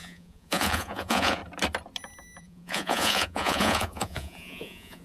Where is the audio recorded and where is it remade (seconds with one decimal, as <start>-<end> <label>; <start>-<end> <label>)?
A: 0.0-1.4 remade; 1.4-2.4 recorded; 2.4-5.0 remade